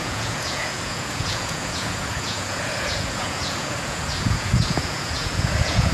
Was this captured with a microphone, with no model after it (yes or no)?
no